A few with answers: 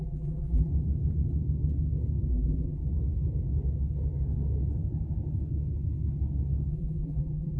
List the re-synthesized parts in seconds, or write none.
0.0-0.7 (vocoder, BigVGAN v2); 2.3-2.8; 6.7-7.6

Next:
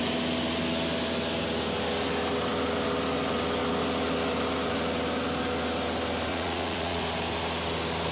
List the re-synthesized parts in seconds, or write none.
6.3-7.0 (vocoder, Vocos)

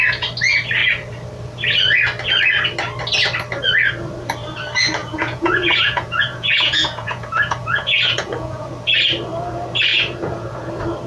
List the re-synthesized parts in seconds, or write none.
5.0-8.7 (vocoder, Vocos); 9.9-10.7

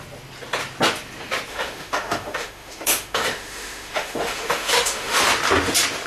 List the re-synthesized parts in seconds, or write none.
1.5-5.2 (autoencoder, DAC-VAE)

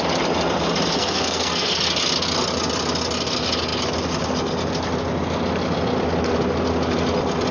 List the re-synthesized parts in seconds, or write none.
0.9-1.8 (codec, SNAC)

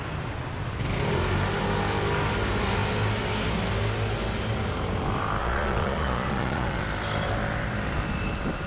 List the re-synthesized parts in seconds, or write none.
5.4-6.8 (vocoder, Vocos)

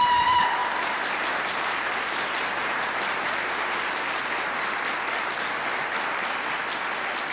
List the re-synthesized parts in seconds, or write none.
none

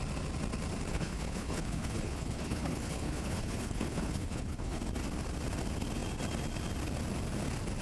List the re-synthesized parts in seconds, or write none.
0.9-4.8 (codec, HILCodec)